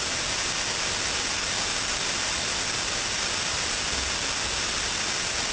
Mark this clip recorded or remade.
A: recorded